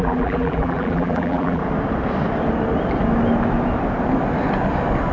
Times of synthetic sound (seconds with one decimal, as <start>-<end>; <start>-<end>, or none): 0.0-1.6